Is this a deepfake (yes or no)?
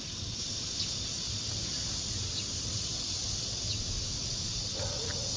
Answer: no